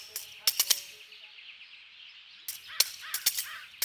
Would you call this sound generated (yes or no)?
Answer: no